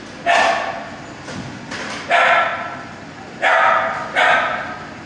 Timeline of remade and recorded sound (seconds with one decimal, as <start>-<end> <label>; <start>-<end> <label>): 0.0-5.1 recorded